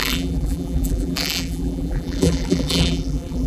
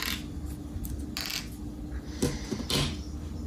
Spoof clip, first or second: first